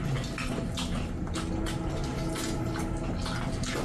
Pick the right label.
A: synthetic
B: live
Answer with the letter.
B